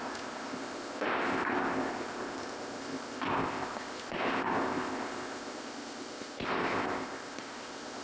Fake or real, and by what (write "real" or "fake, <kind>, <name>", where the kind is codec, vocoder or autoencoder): fake, codec, ZipCodec